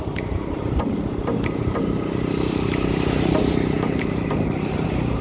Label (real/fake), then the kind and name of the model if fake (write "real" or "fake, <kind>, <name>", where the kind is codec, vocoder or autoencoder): fake, vocoder, BigVGAN v2